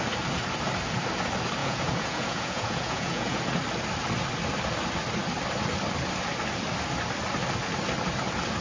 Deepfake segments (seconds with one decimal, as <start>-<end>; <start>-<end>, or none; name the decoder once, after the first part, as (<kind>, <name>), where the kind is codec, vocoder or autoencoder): 1.6-3.4 (vocoder, Vocos)